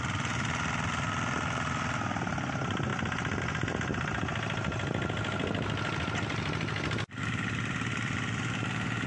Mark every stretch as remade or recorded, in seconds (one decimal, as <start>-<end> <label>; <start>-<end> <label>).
0.0-9.1 recorded

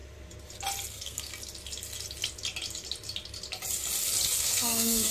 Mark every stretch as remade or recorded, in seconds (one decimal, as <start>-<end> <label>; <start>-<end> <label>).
0.0-0.9 recorded; 0.9-1.3 remade; 1.3-4.4 recorded; 4.4-5.1 remade

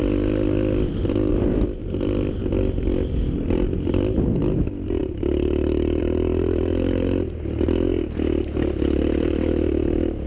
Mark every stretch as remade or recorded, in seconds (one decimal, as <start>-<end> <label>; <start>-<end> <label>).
0.0-10.3 recorded

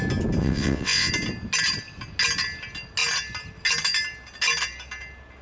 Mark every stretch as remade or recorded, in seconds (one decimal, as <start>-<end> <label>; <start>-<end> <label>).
0.0-0.4 recorded; 0.4-1.1 remade; 1.1-5.4 recorded